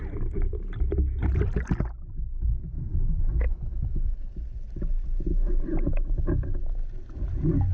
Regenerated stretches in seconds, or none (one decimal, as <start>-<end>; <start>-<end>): 5.3-7.3